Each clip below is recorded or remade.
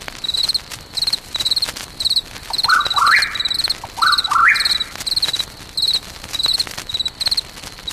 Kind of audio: recorded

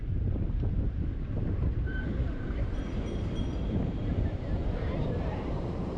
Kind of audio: remade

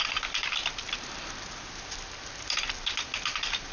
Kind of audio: recorded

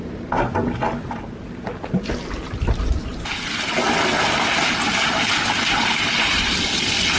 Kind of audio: recorded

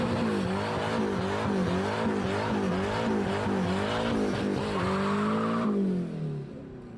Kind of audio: recorded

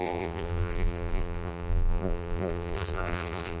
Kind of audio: remade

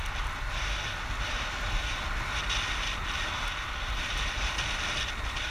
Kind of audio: recorded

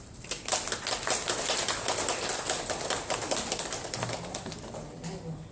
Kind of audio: recorded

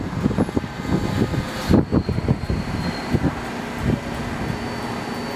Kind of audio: recorded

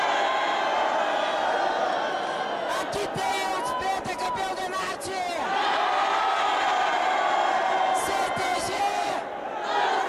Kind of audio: recorded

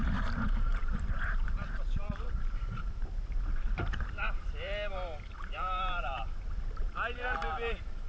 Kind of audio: remade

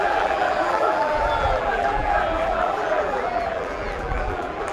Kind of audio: remade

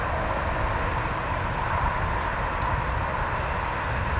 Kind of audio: recorded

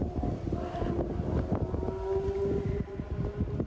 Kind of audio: recorded